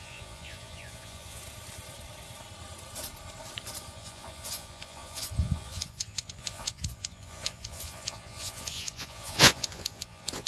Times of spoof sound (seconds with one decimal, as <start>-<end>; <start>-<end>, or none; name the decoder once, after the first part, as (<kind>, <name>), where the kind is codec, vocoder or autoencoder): 0.0-1.4 (vocoder, Vocos); 3.9-10.5